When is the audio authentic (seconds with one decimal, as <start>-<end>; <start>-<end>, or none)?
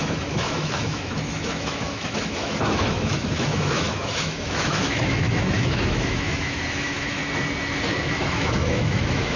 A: 7.2-7.9